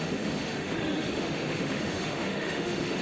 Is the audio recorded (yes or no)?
no